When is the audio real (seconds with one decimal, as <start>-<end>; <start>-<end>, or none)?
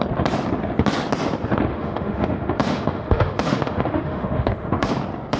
0.0-1.7; 4.9-5.4